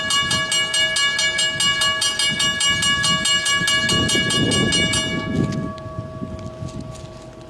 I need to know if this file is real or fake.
real